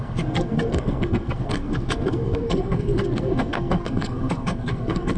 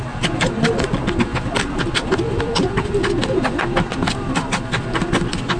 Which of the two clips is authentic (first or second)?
second